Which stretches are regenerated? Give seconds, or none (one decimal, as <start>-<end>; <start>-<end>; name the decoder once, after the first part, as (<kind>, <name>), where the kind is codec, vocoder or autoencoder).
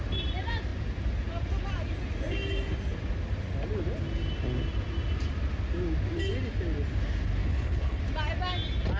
7.4-8.0 (codec, HILCodec)